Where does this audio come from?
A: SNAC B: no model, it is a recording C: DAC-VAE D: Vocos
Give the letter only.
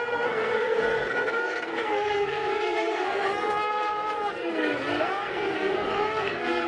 A